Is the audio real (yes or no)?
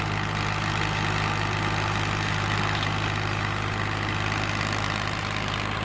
yes